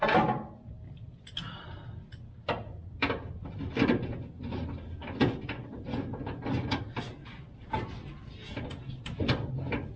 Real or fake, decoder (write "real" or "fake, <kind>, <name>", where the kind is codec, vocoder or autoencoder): real